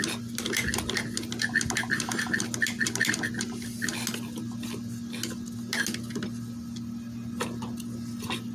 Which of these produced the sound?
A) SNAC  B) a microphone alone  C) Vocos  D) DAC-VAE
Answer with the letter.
B